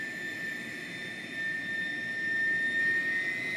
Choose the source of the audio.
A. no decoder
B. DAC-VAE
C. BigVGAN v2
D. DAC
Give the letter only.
A